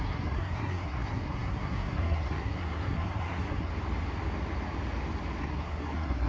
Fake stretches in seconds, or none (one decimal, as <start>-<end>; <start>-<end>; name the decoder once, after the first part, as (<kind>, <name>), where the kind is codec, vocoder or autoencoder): 0.0-3.7 (codec, SNAC); 5.4-6.3